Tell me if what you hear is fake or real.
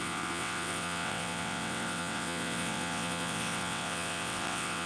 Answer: fake